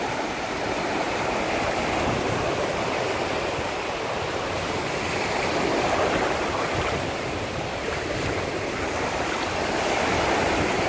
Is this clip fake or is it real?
fake